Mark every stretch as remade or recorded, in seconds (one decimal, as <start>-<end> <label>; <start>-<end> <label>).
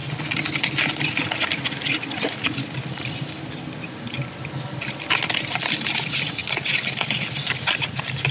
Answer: 0.0-8.3 recorded